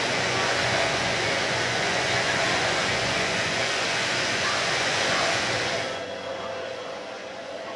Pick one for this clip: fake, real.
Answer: fake